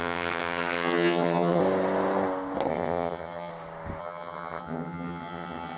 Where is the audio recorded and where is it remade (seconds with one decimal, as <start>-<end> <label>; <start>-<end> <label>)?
0.0-1.6 remade; 1.6-2.7 recorded; 2.7-3.5 remade; 3.5-4.0 recorded; 4.0-5.8 remade